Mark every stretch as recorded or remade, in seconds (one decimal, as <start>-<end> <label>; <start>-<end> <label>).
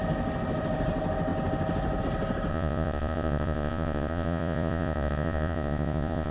0.0-2.5 recorded; 2.5-6.3 remade